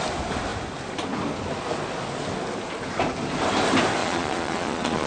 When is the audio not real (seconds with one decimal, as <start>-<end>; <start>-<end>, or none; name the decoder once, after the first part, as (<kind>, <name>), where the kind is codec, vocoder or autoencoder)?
4.0-5.1 (vocoder, Vocos)